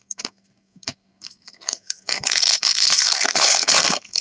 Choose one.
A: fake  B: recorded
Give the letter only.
A